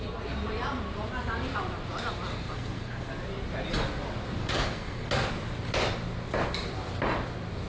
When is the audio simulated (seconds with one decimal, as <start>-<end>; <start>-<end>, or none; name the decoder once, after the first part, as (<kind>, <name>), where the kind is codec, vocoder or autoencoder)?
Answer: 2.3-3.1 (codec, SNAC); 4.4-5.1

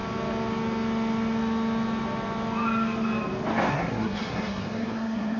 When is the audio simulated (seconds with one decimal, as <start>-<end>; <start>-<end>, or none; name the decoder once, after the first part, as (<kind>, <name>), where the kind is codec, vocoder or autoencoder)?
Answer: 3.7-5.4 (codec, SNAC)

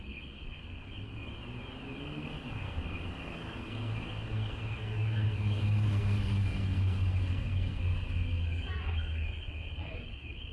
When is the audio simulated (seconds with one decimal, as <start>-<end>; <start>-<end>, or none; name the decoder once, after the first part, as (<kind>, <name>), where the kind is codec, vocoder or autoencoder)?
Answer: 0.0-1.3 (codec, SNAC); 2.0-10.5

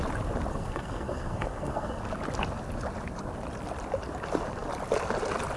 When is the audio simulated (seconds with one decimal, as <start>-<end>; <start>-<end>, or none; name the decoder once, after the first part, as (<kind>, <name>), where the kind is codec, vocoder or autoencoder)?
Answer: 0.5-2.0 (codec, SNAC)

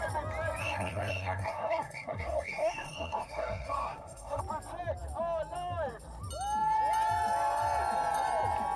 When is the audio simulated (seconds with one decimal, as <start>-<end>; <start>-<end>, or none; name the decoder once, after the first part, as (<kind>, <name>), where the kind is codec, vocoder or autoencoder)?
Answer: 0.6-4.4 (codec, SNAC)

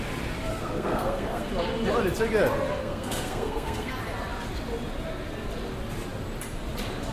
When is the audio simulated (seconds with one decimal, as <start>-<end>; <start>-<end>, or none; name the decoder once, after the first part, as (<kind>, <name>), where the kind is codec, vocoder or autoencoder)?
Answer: 0.5-1.5 (codec, SNAC); 2.8-3.9

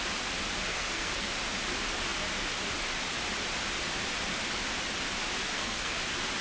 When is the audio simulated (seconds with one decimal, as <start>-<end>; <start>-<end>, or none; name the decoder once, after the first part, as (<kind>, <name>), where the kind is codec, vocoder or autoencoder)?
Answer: 0.7-1.3 (codec, SNAC); 5.5-6.0

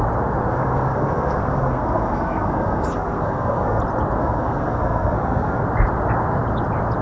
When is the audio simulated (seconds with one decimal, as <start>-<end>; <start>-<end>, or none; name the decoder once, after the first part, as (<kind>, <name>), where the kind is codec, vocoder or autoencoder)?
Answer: 0.5-3.8 (codec, SNAC); 4.2-5.6